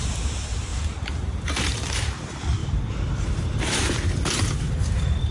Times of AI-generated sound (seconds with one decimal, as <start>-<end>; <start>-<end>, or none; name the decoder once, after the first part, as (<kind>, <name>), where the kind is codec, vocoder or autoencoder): 0.0-5.3 (vocoder, BigVGAN v2)